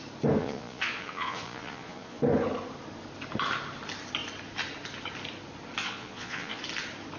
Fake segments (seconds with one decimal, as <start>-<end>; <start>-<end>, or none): 0.4-2.2; 5.8-6.6